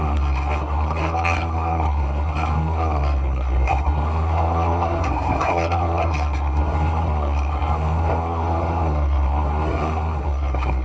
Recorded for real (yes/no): no